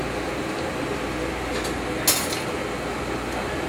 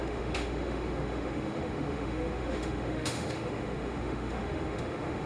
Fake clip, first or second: second